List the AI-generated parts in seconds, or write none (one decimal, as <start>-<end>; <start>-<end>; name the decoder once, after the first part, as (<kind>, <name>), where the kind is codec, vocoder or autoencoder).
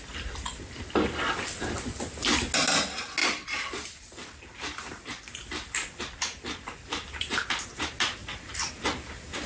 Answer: 3.2-7.2 (vocoder, BigVGAN v2); 8.2-9.1